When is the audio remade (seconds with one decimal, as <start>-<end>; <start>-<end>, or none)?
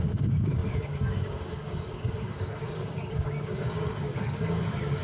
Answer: 0.0-5.0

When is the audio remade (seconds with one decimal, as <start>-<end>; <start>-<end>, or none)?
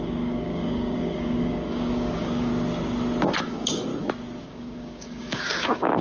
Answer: 0.0-2.5; 3.4-3.9; 4.4-6.0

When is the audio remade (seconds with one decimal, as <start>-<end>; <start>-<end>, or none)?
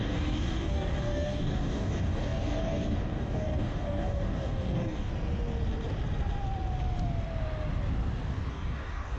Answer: 0.0-5.1; 8.5-9.2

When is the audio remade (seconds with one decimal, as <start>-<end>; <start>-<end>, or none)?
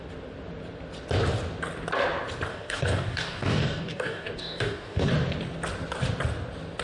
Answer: 2.5-5.1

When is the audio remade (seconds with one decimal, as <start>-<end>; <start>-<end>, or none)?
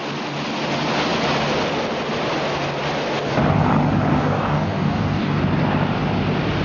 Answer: 4.1-5.4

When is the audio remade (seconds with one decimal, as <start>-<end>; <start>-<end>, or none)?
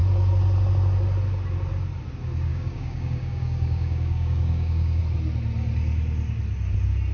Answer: 2.5-5.0